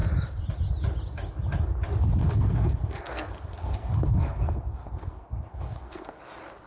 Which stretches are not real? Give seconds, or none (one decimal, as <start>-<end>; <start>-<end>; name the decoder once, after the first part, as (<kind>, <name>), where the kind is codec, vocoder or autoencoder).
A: 2.2-6.2 (codec, SNAC)